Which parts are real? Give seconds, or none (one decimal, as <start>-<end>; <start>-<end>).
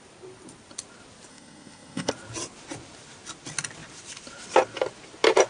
0.0-1.3; 2.1-5.5